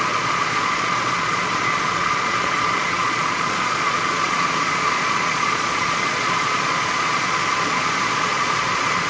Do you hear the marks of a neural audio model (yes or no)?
yes